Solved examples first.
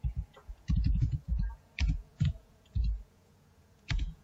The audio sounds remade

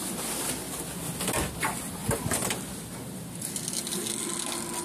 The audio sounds recorded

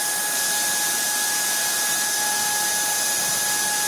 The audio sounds recorded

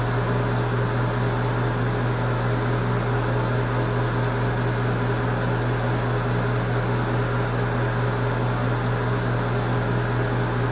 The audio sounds recorded